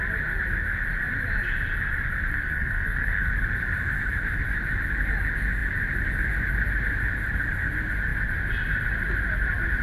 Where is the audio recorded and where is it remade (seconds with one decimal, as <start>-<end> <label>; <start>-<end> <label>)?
0.0-2.3 recorded; 2.3-3.3 remade; 3.3-9.8 recorded